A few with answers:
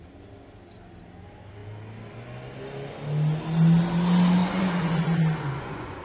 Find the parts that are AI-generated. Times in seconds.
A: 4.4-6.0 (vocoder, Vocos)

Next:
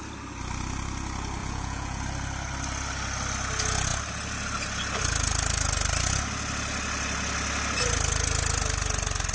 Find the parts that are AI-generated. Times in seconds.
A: 1.4-2.0 (vocoder, Vocos)

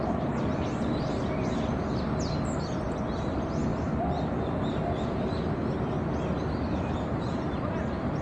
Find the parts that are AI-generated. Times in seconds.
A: none

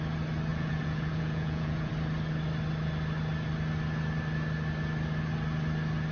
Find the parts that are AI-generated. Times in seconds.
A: 0.5-1.9 (vocoder, Vocos)

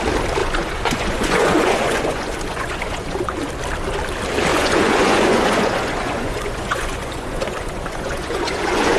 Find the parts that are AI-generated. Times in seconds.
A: 0.4-3.4 (vocoder, Vocos); 4.5-9.0

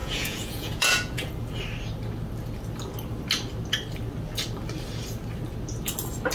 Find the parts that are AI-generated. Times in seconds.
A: 0.0-1.3 (vocoder, Vocos)